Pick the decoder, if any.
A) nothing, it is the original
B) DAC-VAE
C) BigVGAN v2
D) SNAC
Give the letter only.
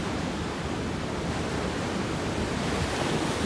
A